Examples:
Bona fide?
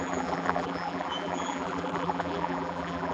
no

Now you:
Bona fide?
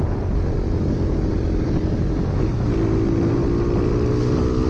yes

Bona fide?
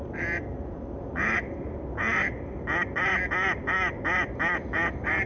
yes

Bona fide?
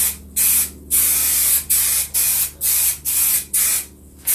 yes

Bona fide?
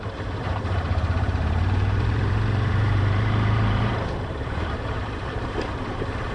no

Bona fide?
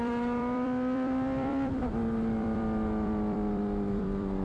no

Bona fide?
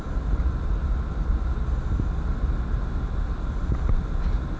yes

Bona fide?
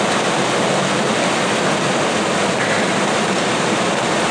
yes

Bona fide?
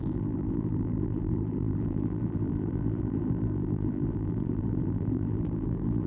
no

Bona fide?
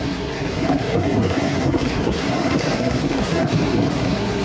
no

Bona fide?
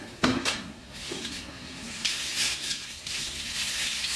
no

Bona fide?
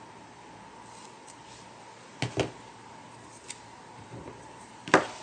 yes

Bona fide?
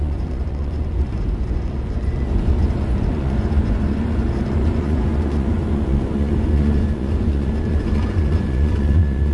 no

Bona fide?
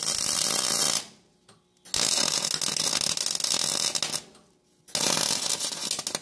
yes